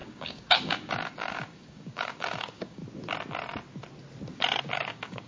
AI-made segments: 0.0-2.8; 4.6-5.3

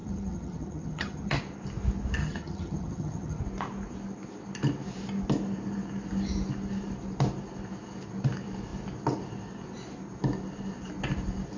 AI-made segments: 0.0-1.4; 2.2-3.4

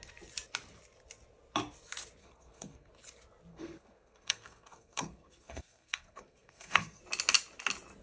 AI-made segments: 2.2-2.9; 3.5-7.0